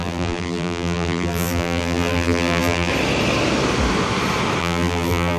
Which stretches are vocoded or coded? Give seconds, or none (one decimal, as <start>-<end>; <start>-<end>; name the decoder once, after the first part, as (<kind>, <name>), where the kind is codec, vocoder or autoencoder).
0.0-2.9 (vocoder, BigVGAN v2); 4.6-5.4